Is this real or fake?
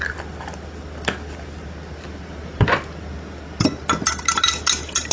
real